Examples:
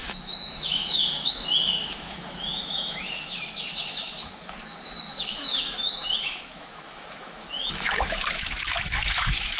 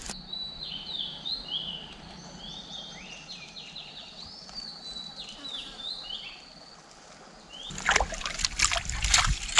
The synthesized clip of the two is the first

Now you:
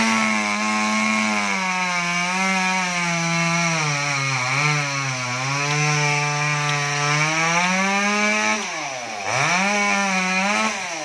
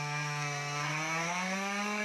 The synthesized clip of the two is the second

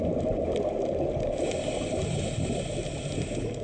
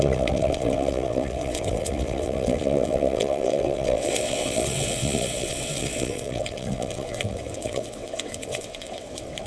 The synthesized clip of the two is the second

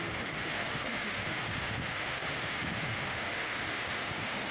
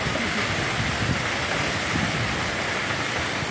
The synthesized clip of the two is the first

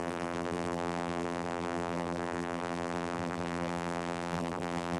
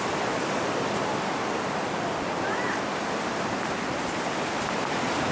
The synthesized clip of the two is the first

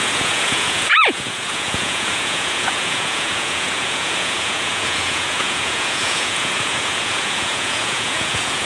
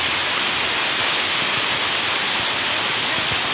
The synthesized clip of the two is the first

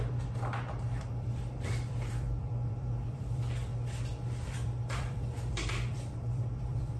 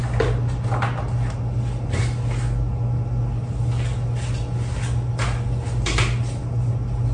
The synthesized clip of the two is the first